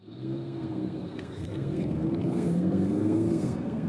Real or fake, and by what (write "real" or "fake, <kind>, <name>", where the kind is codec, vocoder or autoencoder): fake, codec, SNAC